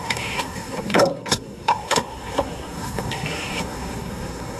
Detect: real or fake fake